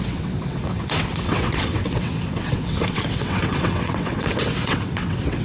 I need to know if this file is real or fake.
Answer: fake